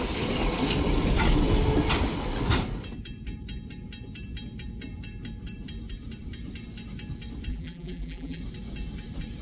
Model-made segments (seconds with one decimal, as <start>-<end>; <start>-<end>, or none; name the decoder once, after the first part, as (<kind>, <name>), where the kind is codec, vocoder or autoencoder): 7.5-8.4 (vocoder, BigVGAN v2)